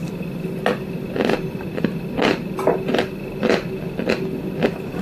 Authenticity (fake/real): real